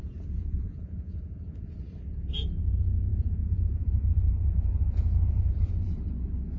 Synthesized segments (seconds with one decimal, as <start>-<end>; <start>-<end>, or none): 0.4-1.7; 3.1-5.7